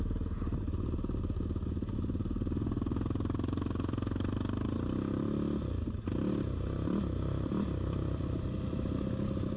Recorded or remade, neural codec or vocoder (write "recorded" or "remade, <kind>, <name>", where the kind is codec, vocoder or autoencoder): recorded